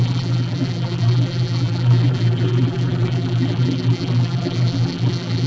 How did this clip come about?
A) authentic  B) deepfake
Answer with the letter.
B